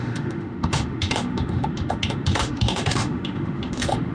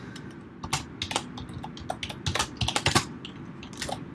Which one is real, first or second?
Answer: second